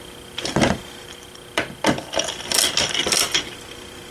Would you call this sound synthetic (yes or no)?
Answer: no